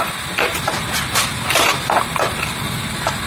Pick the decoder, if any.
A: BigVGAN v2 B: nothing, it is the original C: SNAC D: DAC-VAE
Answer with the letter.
B